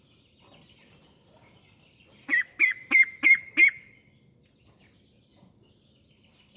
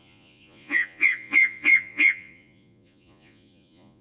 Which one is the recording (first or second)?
first